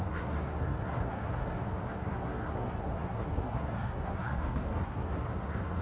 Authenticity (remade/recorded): remade